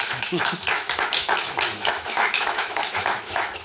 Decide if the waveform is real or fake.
fake